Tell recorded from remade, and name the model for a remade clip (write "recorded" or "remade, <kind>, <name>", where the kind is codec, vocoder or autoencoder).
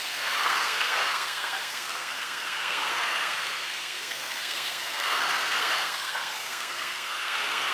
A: remade, codec, SNAC